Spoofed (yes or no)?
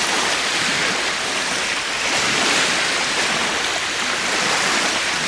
no